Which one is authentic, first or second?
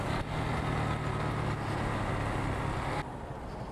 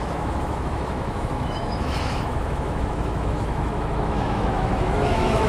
first